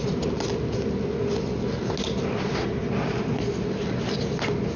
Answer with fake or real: real